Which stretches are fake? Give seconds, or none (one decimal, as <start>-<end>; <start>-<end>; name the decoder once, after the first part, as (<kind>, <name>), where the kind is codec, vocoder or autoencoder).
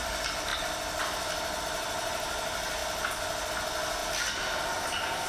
none